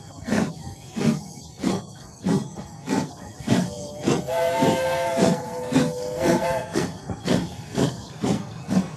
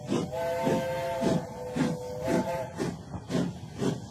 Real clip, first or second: second